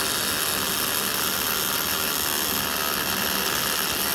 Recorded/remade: recorded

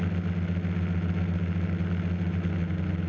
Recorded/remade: recorded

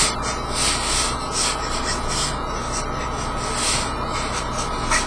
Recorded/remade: recorded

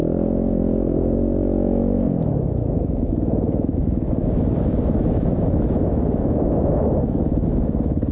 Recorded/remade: remade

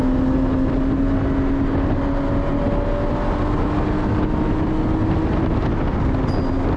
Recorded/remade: recorded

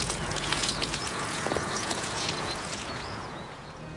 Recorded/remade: remade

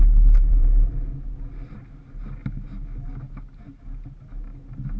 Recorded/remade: recorded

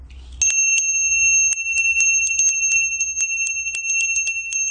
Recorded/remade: recorded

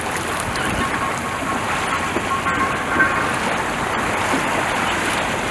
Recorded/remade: recorded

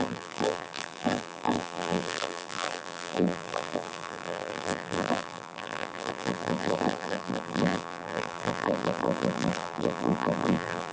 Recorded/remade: remade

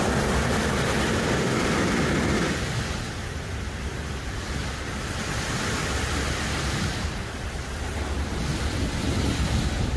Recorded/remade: remade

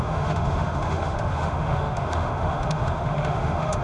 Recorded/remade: remade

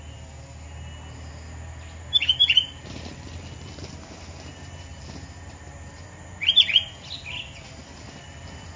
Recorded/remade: recorded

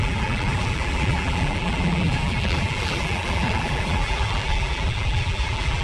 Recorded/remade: remade